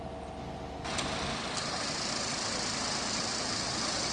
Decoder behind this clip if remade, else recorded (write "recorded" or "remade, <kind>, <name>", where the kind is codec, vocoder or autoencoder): recorded